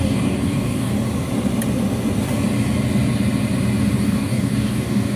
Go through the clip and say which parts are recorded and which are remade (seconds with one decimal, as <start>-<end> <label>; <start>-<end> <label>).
0.0-0.9 remade; 0.9-4.0 recorded; 4.0-5.2 remade